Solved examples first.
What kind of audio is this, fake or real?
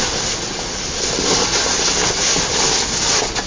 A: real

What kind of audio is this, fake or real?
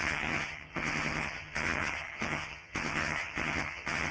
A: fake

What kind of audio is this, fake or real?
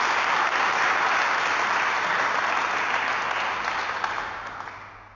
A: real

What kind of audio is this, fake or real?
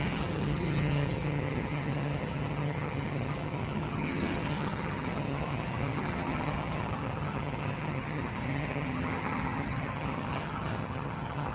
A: fake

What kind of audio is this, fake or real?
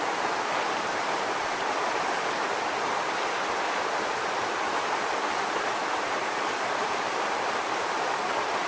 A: real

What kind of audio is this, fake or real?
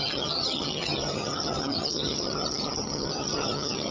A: fake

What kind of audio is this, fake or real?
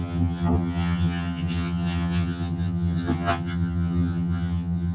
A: fake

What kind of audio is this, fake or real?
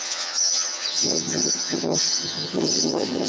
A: fake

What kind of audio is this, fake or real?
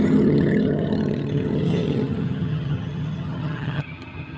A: fake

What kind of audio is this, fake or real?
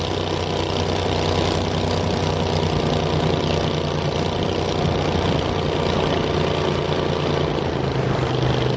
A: real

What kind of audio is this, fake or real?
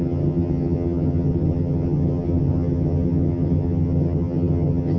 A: fake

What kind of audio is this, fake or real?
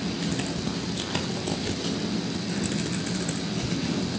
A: real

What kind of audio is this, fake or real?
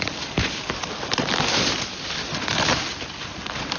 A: real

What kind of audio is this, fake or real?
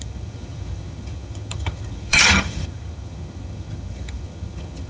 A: fake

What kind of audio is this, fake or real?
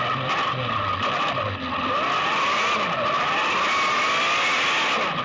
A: real